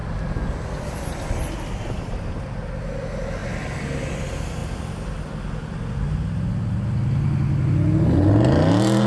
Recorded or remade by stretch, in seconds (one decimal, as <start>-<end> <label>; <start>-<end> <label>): 0.0-9.1 recorded